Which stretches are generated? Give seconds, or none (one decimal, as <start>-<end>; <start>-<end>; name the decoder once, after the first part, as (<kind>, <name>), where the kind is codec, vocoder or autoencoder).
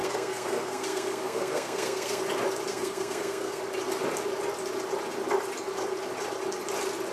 0.0-2.2 (codec, SNAC); 2.7-3.6